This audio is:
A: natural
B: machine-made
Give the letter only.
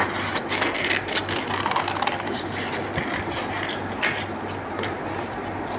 A